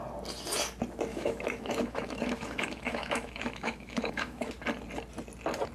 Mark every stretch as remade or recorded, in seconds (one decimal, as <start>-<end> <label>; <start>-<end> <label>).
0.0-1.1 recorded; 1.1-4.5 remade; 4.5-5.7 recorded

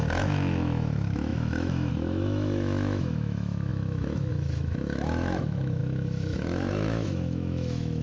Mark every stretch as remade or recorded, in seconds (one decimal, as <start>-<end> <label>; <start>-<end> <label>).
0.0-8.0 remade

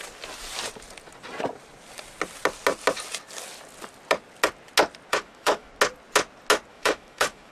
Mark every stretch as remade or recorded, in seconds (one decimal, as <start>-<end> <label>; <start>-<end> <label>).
0.0-5.1 recorded; 5.1-5.7 remade; 5.7-6.7 recorded; 6.7-7.5 remade

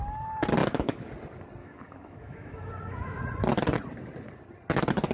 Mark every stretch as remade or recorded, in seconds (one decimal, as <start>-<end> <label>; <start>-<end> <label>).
0.0-0.6 recorded; 0.6-1.1 remade; 1.1-1.6 recorded; 1.6-3.2 remade; 3.2-5.1 recorded

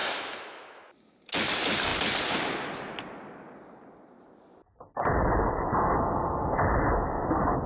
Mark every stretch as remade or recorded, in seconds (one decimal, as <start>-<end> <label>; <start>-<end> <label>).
0.0-0.9 remade; 0.9-7.7 recorded

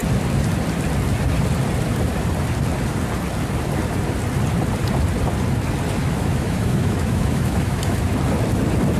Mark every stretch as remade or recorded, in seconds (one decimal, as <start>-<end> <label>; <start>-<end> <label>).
0.0-6.0 recorded; 6.0-8.1 remade; 8.1-9.0 recorded